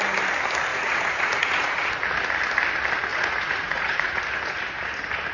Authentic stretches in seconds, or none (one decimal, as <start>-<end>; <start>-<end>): 0.0-0.7; 1.9-3.1; 4.2-5.3